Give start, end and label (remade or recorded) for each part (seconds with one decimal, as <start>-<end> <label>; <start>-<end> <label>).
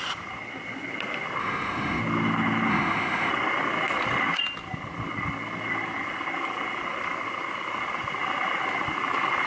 0.0-1.4 recorded; 1.4-2.0 remade; 2.0-2.7 recorded; 2.7-3.3 remade; 3.3-9.5 recorded